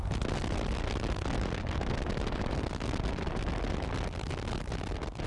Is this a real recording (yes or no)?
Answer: yes